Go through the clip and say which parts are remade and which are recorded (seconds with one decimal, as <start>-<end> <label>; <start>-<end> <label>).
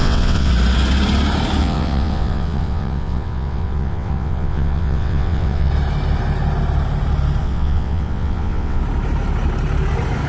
0.0-0.5 remade; 0.5-1.6 recorded; 1.6-5.7 remade; 5.7-7.4 recorded; 7.4-8.8 remade; 8.8-10.3 recorded